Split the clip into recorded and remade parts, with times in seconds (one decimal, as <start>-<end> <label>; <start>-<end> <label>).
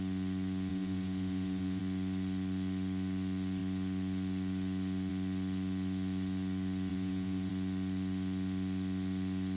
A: 0.0-0.7 recorded; 0.7-1.8 remade; 1.8-6.9 recorded; 6.9-7.5 remade; 7.5-9.6 recorded